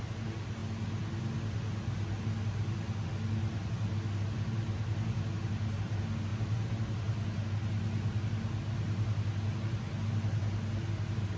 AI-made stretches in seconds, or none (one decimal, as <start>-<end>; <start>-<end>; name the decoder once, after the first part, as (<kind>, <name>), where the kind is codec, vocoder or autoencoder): none